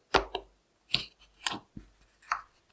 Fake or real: real